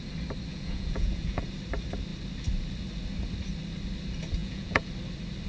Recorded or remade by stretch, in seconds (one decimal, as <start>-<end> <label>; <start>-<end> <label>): 0.0-0.5 recorded; 0.5-1.4 remade; 1.4-4.4 recorded; 4.4-4.9 remade; 4.9-5.5 recorded